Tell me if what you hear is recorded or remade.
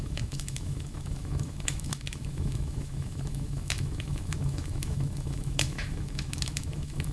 remade